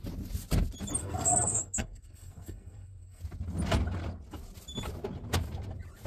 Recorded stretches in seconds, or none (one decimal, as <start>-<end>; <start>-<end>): 0.0-1.0; 3.2-6.1